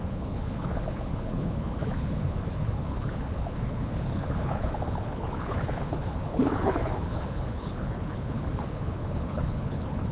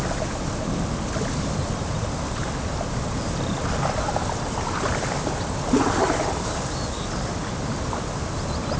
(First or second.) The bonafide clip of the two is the second